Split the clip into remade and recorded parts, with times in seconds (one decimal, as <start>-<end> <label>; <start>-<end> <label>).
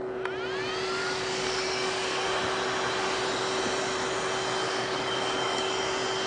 0.0-1.0 recorded; 1.0-2.4 remade; 2.4-4.6 recorded; 4.6-5.8 remade; 5.8-6.3 recorded